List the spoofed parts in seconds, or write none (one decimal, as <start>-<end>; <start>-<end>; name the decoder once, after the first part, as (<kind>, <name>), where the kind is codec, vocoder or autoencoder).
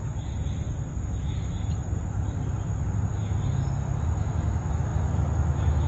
none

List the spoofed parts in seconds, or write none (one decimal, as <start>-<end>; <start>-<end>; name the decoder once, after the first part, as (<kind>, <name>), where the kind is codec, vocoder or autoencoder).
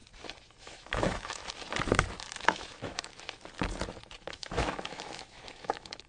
0.6-1.4 (autoencoder, DAC-VAE); 2.4-3.1; 4.3-6.1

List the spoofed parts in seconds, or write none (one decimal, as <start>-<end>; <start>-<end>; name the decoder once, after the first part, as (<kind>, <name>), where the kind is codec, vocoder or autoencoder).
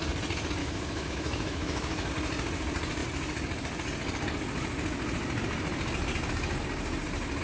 0.6-2.1 (autoencoder, DAC-VAE)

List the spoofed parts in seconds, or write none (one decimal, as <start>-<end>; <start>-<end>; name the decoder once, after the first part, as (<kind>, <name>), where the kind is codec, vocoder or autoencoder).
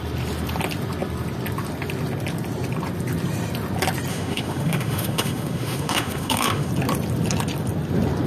4.1-6.7 (autoencoder, DAC-VAE)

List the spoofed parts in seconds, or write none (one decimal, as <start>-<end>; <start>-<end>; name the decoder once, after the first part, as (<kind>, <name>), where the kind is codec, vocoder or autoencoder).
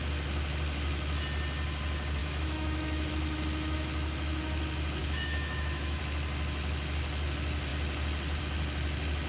2.2-3.1 (autoencoder, DAC-VAE); 5.0-6.0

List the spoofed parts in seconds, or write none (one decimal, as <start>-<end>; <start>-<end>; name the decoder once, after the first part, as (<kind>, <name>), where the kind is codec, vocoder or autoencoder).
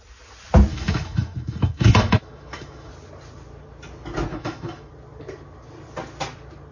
0.7-2.9 (autoencoder, DAC-VAE); 4.3-4.9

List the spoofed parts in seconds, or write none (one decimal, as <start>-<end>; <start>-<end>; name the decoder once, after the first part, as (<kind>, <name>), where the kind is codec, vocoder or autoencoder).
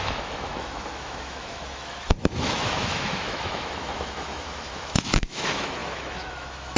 0.0-6.8 (autoencoder, DAC-VAE)